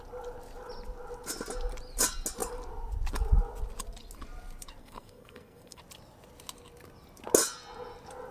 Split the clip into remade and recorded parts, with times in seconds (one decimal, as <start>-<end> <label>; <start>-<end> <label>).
0.0-4.8 recorded; 4.8-5.8 remade; 5.8-8.3 recorded